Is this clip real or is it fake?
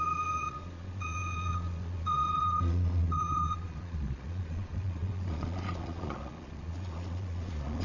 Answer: fake